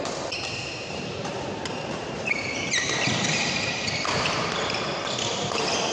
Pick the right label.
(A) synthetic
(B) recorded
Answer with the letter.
A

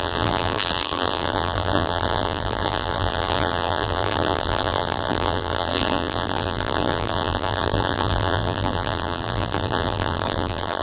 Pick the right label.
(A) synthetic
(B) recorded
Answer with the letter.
A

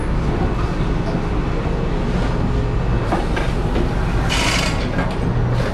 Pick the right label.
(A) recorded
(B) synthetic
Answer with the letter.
A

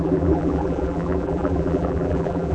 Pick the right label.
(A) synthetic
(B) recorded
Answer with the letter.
A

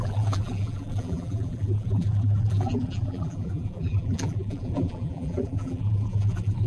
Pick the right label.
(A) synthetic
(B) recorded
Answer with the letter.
A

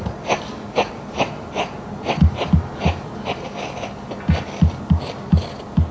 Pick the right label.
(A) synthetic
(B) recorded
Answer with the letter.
B